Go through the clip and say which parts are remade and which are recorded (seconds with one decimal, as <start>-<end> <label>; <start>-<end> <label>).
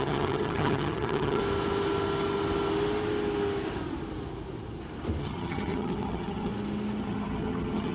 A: 0.0-1.4 remade; 1.4-5.2 recorded; 5.2-6.5 remade; 6.5-7.0 recorded; 7.0-7.9 remade